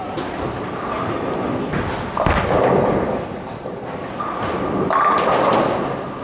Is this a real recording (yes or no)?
yes